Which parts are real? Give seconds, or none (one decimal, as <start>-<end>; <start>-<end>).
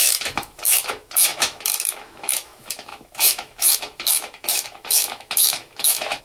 none